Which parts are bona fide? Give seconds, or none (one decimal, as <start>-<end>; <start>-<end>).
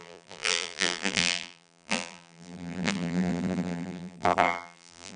none